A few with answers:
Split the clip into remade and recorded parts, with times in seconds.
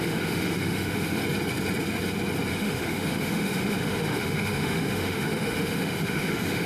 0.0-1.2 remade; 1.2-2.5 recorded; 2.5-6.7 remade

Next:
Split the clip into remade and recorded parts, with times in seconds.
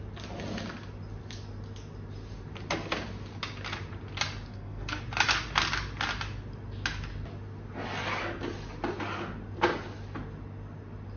0.0-4.5 recorded; 4.5-5.0 remade; 5.0-11.2 recorded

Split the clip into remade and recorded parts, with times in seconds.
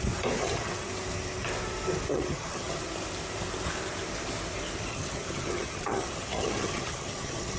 0.0-0.4 recorded; 0.4-0.9 remade; 0.9-2.1 recorded; 2.1-2.8 remade; 2.8-4.9 recorded; 4.9-7.6 remade